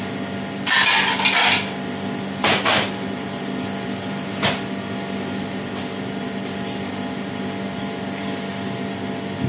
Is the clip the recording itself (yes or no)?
yes